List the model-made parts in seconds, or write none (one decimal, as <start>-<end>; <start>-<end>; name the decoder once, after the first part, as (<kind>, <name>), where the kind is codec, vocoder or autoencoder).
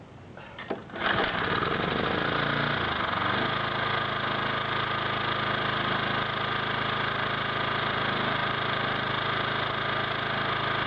8.4-9.1 (vocoder, BigVGAN v2)